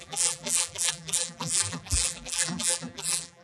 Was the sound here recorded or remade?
remade